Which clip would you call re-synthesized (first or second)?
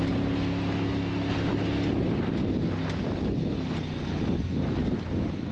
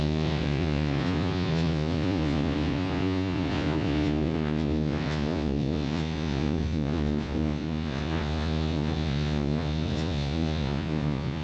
second